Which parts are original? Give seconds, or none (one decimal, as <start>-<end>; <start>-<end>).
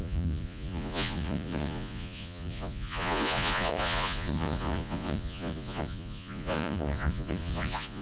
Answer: none